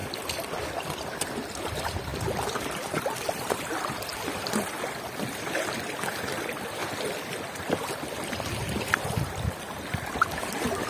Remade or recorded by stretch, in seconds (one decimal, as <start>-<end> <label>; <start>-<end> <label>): 0.0-0.8 recorded; 0.8-2.1 remade; 2.1-2.7 recorded; 2.7-4.1 remade; 4.1-5.3 recorded; 5.3-6.8 remade; 6.8-8.9 recorded; 8.9-10.9 remade